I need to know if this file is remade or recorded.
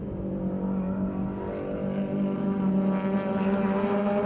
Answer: recorded